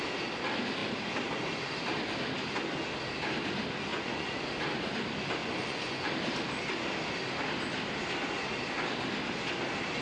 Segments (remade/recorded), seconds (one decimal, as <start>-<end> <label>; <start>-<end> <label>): 0.0-3.9 recorded; 3.9-4.4 remade; 4.4-5.4 recorded; 5.4-6.1 remade; 6.1-10.0 recorded